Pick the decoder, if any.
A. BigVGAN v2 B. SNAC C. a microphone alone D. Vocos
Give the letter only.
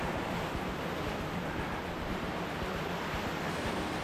C